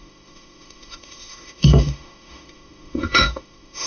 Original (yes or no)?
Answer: no